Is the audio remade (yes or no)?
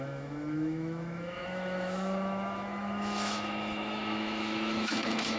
yes